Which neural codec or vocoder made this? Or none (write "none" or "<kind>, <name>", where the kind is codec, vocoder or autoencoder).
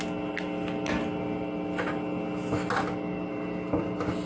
none